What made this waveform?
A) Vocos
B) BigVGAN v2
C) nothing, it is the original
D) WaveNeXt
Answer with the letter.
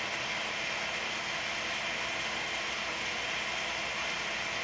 C